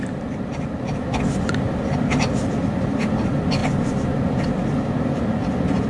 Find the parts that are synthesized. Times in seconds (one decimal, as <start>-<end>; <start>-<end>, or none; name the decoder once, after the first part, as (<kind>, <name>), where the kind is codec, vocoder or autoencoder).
none